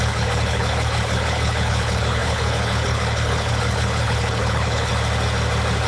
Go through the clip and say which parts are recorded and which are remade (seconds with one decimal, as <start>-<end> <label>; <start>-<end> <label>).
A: 0.0-4.9 remade; 4.9-5.9 recorded